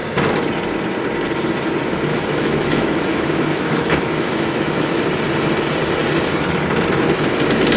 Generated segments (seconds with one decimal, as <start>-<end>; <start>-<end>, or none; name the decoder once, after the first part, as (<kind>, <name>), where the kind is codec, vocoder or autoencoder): 2.1-5.0 (autoencoder, DAC-VAE)